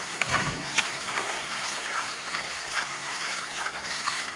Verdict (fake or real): fake